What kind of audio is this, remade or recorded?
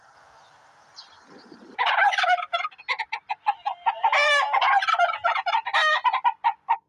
recorded